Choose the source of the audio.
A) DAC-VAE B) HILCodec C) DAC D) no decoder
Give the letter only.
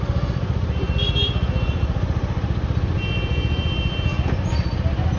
D